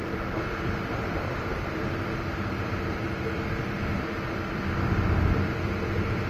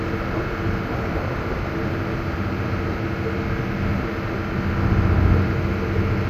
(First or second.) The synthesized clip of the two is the first